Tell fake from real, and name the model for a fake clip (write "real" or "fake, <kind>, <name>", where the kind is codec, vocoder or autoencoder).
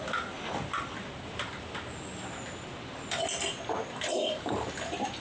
real